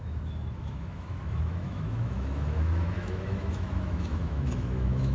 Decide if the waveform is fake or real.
fake